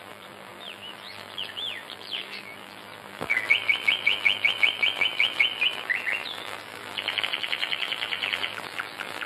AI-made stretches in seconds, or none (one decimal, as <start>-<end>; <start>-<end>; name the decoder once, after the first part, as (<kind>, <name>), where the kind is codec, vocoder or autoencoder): 0.0-9.3 (vocoder, BigVGAN v2)